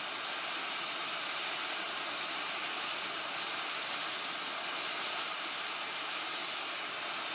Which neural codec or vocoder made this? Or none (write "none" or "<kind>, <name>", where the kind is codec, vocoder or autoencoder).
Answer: none